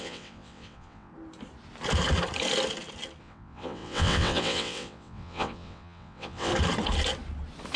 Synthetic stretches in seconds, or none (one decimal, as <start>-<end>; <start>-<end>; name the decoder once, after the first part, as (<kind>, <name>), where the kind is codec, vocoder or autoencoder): 0.0-1.1 (vocoder, WaveNeXt); 3.2-6.5